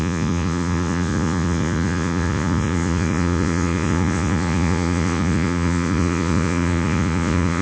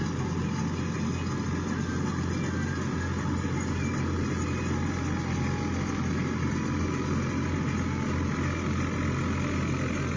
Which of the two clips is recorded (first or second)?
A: second